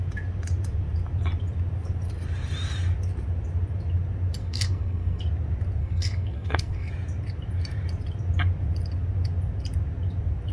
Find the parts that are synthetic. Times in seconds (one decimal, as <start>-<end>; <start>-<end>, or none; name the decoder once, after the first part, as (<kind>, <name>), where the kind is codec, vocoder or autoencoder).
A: 4.4-5.2 (codec, SNAC); 5.8-6.9